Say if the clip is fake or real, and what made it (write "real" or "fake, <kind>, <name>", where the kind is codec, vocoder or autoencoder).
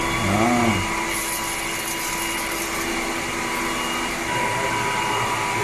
real